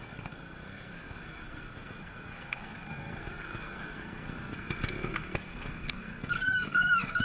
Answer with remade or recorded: remade